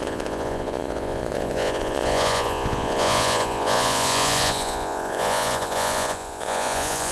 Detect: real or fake fake